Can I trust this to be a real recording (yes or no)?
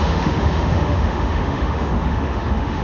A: no